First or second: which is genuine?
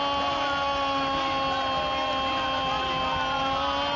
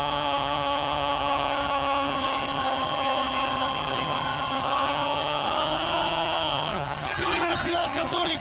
first